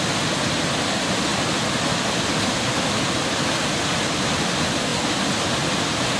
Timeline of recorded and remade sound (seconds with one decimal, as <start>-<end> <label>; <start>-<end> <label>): 0.0-6.2 recorded